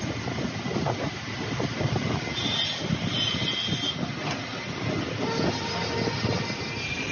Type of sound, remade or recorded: recorded